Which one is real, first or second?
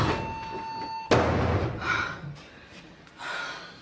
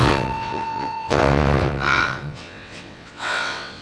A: first